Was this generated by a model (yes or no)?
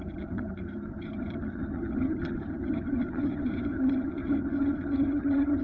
yes